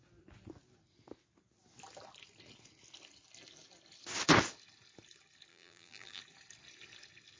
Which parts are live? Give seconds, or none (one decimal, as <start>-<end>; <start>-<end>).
0.0-5.5; 6.2-7.4